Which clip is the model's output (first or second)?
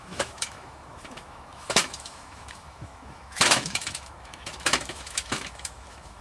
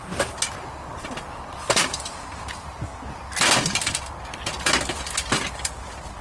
first